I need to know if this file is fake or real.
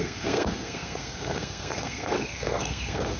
fake